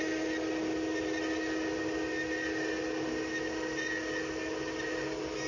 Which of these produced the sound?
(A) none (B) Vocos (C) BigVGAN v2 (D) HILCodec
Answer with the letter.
A